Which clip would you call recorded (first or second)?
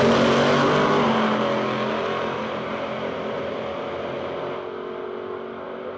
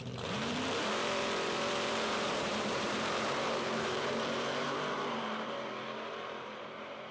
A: first